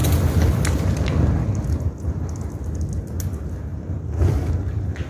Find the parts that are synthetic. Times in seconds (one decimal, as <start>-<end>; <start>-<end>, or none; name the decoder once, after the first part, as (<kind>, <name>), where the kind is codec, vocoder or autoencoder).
none